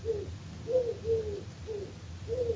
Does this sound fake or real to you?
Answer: real